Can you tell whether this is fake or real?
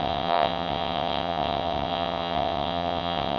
fake